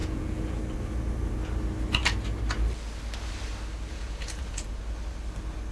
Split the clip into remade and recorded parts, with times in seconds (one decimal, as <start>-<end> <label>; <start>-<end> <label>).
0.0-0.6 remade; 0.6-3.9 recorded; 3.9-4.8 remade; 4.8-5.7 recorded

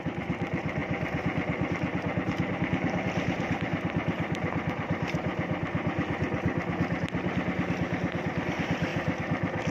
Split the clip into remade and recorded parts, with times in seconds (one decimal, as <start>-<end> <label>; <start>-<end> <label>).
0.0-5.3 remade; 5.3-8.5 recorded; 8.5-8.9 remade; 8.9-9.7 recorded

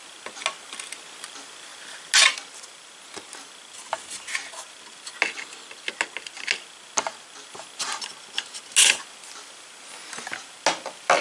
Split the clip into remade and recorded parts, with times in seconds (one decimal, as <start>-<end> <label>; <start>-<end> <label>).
0.0-11.2 recorded

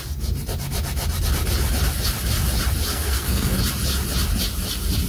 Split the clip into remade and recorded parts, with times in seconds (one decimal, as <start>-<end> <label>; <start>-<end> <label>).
0.0-2.9 recorded; 2.9-3.6 remade; 3.6-5.1 recorded

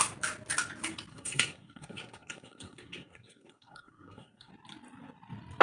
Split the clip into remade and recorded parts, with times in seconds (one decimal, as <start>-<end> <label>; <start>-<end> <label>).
0.0-1.1 recorded; 1.1-4.5 remade; 4.5-5.6 recorded

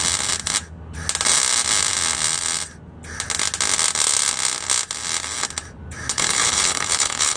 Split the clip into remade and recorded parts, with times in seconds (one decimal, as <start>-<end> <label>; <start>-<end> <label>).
0.0-6.1 recorded; 6.1-7.4 remade